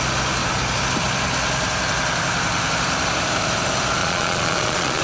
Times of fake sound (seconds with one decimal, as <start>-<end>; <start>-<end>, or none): 4.0-5.0